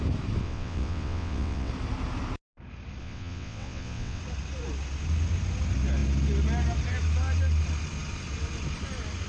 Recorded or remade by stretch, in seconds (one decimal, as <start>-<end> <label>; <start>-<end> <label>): 0.0-0.4 recorded; 0.4-1.7 remade; 1.7-3.0 recorded; 3.0-4.2 remade; 4.2-9.3 recorded